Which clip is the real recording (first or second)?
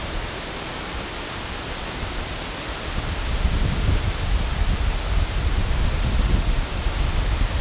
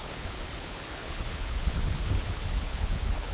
first